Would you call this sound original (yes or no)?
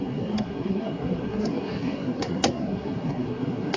no